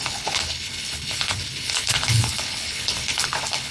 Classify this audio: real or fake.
fake